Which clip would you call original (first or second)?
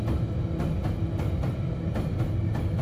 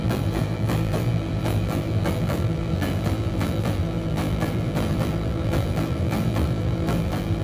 first